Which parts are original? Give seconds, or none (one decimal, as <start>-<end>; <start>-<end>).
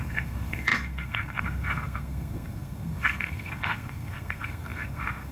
none